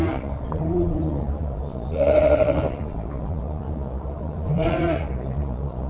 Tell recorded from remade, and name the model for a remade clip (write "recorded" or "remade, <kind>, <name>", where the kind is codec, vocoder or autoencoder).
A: remade, vocoder, Vocos